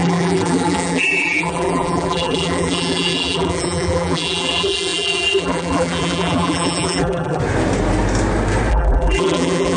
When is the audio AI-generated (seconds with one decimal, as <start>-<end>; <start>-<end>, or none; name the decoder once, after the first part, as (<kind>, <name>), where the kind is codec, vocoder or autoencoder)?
0.0-7.4 (vocoder, BigVGAN v2); 8.7-9.8